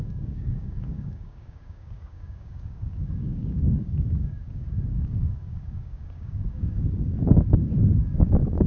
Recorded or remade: remade